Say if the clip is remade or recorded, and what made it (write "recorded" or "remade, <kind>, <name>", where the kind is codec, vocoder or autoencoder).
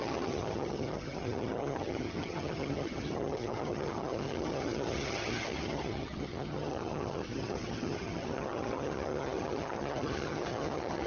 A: remade, vocoder, HiFi-GAN